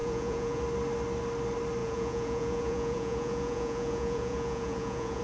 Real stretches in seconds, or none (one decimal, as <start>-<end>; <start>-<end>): 0.6-1.8